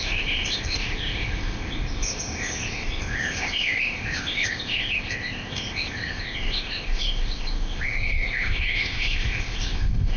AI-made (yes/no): yes